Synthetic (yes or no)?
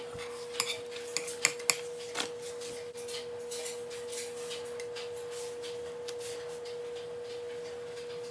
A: no